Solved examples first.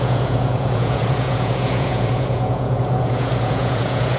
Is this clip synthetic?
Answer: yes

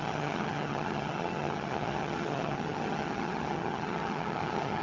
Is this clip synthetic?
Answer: yes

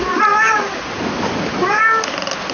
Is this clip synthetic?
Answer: no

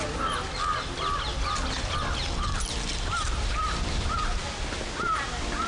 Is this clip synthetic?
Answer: no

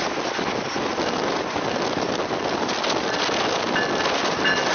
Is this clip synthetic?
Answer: no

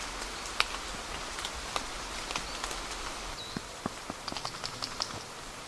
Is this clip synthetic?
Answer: no